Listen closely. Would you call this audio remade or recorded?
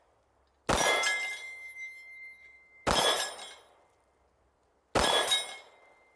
recorded